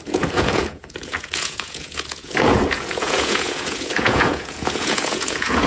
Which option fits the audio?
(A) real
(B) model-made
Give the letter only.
B